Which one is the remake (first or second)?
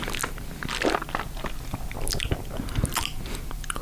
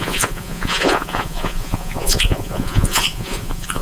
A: second